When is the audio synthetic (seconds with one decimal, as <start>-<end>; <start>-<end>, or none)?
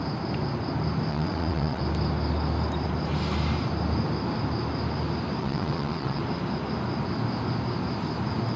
1.1-1.8; 5.4-6.2